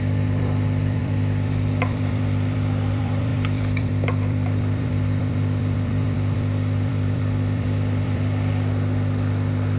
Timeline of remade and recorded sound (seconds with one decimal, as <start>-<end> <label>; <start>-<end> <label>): 0.0-9.8 remade